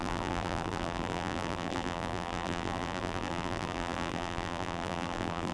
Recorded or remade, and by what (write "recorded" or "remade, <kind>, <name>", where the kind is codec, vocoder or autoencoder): remade, vocoder, BigVGAN v2